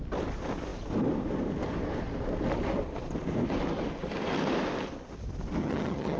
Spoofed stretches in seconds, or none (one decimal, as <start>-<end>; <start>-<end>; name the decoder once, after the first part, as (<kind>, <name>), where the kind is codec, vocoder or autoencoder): 5.6-6.2 (vocoder, HiFi-GAN)